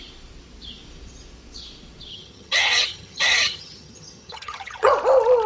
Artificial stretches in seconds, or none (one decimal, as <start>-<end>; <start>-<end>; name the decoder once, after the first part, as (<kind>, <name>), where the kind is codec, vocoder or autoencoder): 2.1-4.9 (vocoder, HiFi-GAN)